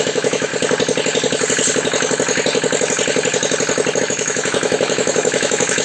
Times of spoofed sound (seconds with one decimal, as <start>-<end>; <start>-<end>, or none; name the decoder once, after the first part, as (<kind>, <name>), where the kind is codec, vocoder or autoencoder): 0.0-0.5 (autoencoder, DAC-VAE); 4.0-5.8